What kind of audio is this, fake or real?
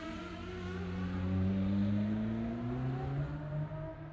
real